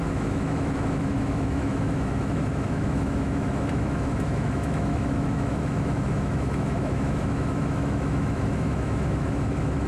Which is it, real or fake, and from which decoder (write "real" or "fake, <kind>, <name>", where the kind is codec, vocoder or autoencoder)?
fake, autoencoder, DAC-VAE